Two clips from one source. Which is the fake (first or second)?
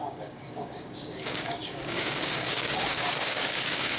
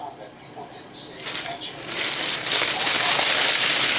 first